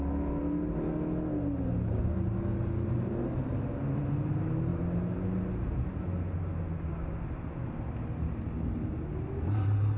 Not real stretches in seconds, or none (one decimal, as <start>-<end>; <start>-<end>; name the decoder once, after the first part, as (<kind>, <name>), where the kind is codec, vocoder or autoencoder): none